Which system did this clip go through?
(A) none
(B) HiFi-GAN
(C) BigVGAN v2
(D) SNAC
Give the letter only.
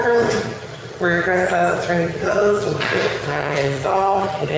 B